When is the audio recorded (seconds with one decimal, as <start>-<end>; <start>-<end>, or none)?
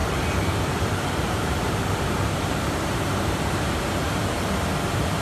4.2-5.2